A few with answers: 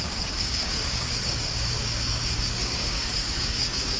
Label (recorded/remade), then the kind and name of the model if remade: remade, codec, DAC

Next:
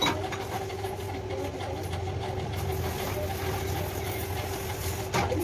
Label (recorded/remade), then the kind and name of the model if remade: recorded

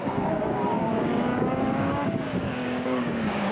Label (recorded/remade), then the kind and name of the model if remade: remade, codec, DAC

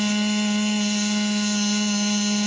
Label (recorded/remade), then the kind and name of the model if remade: recorded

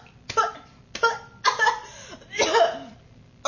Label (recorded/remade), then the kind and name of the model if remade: recorded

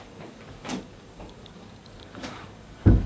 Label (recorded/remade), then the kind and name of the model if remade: remade, codec, DAC